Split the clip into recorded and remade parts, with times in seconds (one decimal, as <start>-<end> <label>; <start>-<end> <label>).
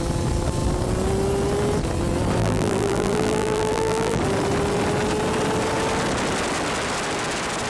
0.0-2.4 recorded; 2.4-4.2 remade; 4.2-7.7 recorded